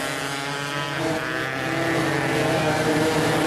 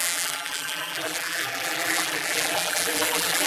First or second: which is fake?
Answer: second